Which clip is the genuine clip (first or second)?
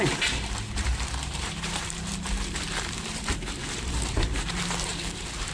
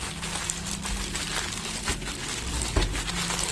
second